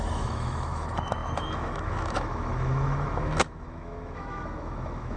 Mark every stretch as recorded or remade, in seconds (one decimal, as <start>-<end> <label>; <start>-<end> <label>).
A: 0.0-5.2 remade